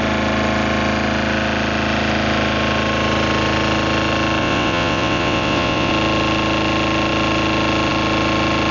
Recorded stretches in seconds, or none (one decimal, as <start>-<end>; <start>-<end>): 0.0-4.4; 5.9-8.7